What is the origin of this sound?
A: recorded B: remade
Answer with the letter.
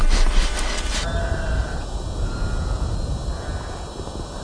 A